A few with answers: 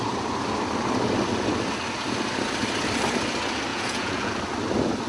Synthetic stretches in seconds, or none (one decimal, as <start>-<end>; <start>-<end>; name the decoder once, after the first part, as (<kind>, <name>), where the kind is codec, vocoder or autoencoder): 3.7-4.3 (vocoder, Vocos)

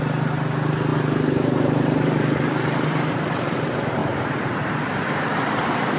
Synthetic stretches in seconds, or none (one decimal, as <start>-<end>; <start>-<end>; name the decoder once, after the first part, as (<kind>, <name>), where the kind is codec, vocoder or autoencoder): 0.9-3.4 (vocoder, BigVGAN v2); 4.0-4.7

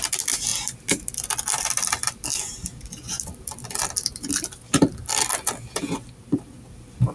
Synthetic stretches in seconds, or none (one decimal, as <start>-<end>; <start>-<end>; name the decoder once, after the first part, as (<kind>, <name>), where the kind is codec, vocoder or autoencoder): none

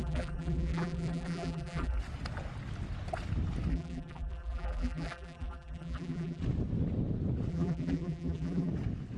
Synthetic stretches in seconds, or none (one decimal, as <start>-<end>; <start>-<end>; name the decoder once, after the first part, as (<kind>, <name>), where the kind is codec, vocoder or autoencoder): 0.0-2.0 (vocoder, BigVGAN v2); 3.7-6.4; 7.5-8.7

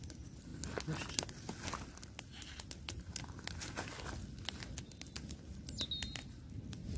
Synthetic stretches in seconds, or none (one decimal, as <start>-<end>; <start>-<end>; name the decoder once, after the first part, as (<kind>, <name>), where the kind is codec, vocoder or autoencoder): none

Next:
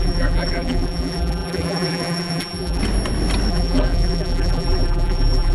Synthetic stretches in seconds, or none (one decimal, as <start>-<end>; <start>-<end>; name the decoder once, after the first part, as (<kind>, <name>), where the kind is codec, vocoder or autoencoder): 0.0-2.8 (vocoder, BigVGAN v2); 3.5-5.5

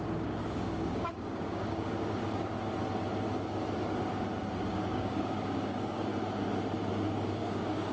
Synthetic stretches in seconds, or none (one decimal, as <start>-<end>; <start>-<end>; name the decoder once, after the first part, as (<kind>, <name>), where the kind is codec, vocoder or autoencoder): 0.0-2.2 (codec, DAC); 4.7-6.1; 6.9-7.9

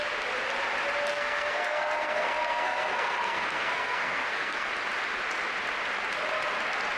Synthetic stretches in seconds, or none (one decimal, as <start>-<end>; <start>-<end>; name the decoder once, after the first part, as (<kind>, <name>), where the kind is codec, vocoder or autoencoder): 1.1-4.7 (codec, SNAC)